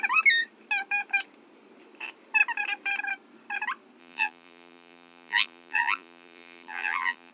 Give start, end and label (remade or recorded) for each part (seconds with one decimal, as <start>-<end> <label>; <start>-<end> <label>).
0.0-4.0 recorded; 4.0-7.3 remade